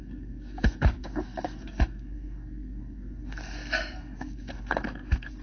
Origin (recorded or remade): remade